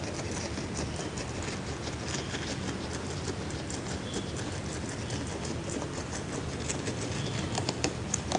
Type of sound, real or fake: real